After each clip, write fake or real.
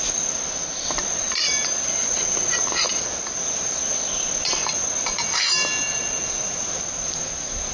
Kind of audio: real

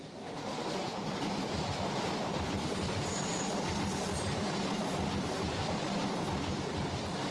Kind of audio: real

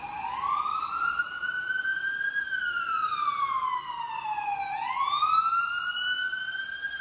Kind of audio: real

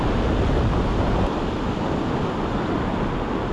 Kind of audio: real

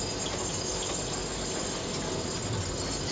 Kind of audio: real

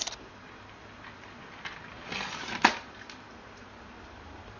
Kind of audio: real